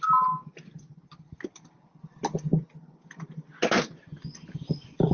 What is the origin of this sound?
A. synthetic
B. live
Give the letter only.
B